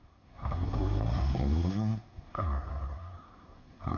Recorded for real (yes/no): no